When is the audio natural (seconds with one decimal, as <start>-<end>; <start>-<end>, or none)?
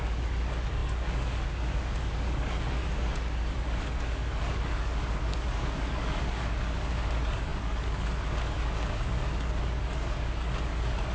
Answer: none